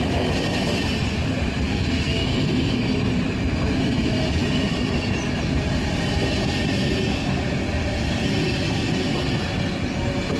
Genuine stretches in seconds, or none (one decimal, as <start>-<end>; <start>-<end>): 0.0-1.7; 2.8-10.4